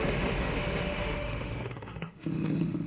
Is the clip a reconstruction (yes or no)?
yes